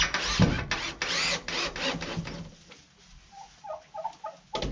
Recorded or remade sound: recorded